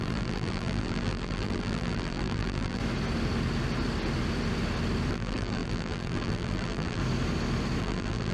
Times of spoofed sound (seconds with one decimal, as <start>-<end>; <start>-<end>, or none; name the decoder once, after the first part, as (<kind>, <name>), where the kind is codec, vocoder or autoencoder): 0.0-2.8 (vocoder, BigVGAN v2); 5.1-7.0; 7.8-8.3